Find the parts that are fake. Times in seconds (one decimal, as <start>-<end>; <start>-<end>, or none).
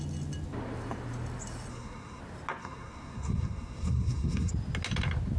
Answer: 1.7-2.2; 2.6-4.5